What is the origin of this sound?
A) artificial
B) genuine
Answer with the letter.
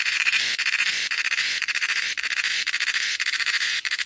A